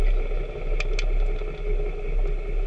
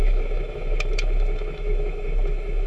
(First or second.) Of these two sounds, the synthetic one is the second